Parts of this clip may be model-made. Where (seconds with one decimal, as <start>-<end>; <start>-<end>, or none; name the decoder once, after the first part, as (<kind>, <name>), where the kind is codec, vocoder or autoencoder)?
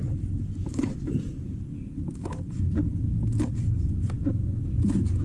0.0-1.7 (vocoder, BigVGAN v2); 4.8-5.2